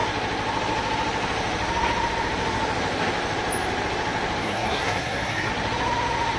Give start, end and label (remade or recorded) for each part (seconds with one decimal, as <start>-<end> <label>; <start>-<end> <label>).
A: 0.0-4.4 recorded; 4.4-5.5 remade; 5.5-6.4 recorded